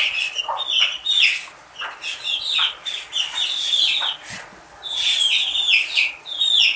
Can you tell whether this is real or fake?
real